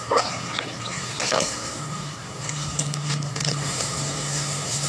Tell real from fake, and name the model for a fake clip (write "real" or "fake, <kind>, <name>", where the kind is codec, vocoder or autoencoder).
fake, codec, SNAC